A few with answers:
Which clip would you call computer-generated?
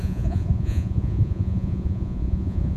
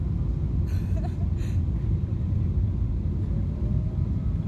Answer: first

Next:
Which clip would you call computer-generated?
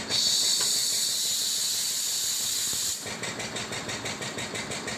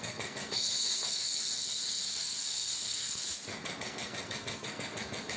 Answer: second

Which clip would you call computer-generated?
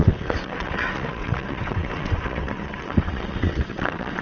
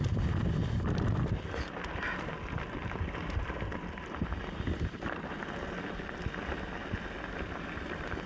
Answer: first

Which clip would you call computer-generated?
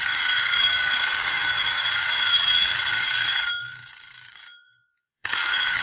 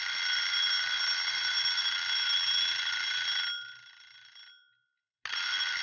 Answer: first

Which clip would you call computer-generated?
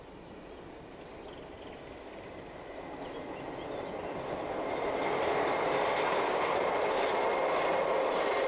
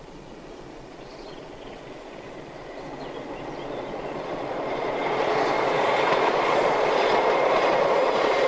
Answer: second